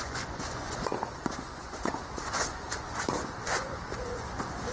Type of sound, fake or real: fake